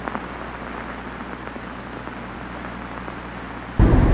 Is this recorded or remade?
recorded